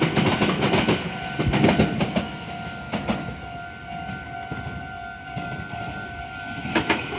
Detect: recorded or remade recorded